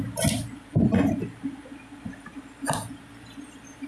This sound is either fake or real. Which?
fake